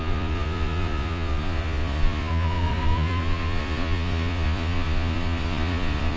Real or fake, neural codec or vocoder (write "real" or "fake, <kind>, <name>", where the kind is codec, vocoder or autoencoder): fake, vocoder, Vocos